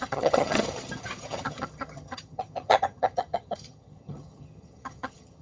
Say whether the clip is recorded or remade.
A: remade